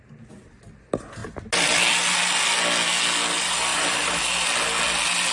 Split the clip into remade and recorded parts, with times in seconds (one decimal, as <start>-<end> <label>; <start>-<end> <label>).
0.0-3.7 recorded; 3.7-4.2 remade; 4.2-5.3 recorded